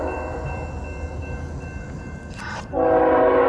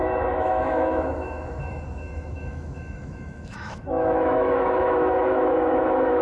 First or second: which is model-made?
second